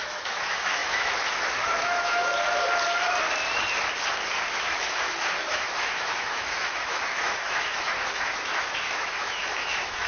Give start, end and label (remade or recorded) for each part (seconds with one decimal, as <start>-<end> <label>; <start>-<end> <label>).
0.0-2.3 remade; 2.3-4.4 recorded; 4.4-10.1 remade